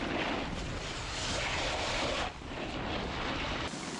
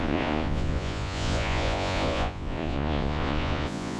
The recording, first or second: first